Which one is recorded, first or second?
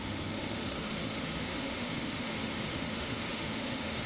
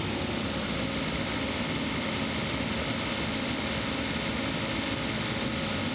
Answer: second